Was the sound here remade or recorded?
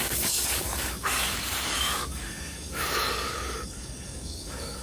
remade